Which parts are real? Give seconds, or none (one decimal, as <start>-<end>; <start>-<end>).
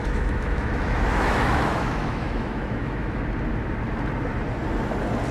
3.2-5.3